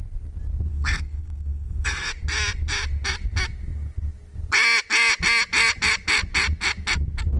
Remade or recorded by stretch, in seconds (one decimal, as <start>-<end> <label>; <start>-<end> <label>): 0.0-0.7 recorded; 0.7-2.1 remade; 2.1-7.4 recorded